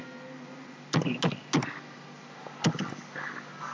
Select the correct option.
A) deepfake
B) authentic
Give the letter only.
B